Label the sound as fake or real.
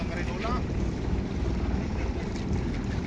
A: real